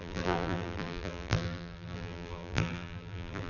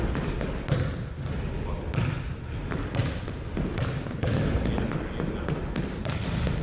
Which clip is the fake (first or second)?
first